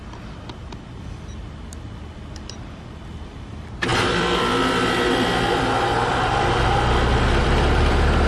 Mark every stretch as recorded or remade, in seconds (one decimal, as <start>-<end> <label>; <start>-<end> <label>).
0.0-0.6 recorded; 0.6-1.2 remade; 1.2-3.9 recorded; 3.9-6.4 remade; 6.4-7.4 recorded; 7.4-8.3 remade

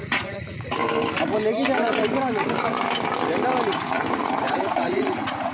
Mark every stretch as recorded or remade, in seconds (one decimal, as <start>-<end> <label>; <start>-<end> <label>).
0.0-0.8 remade; 0.8-4.1 recorded; 4.1-5.5 remade

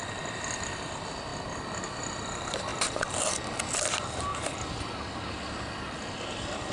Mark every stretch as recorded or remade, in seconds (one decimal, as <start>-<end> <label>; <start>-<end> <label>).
0.0-1.3 remade; 1.3-2.2 recorded; 2.2-4.3 remade; 4.3-5.3 recorded; 5.3-6.7 remade